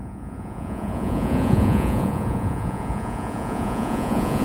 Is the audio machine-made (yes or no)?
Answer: yes